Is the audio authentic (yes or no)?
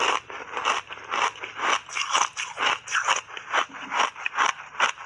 yes